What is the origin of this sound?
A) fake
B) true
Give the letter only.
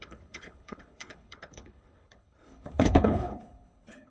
A